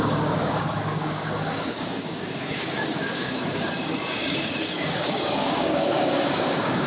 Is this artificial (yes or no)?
yes